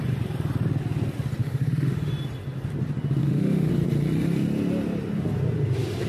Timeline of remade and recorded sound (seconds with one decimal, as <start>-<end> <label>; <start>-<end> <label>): 0.0-1.4 recorded; 1.4-2.1 remade; 2.1-3.2 recorded; 3.2-3.7 remade; 3.7-6.1 recorded